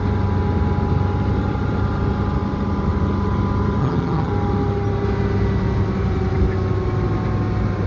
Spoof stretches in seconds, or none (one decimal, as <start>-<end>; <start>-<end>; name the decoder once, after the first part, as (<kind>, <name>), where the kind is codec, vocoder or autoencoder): 3.8-4.3 (vocoder, HiFi-GAN)